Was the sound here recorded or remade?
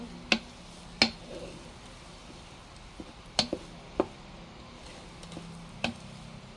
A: recorded